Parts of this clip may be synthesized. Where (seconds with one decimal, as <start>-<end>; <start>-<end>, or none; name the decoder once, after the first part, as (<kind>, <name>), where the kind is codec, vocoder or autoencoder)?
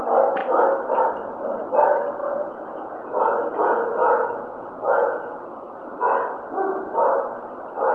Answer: 2.2-5.8 (vocoder, Vocos)